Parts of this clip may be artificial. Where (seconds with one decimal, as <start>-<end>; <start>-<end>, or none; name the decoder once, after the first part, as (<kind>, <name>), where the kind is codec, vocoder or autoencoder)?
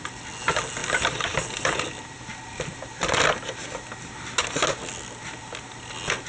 0.8-3.1 (vocoder, BigVGAN v2)